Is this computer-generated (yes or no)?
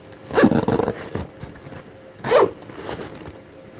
no